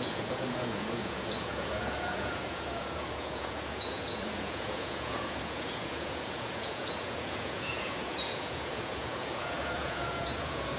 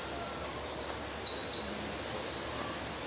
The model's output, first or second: first